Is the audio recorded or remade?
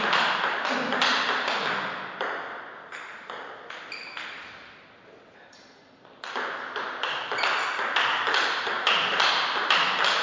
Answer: recorded